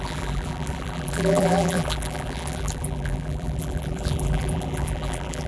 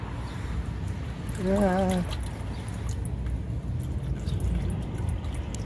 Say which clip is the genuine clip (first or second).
second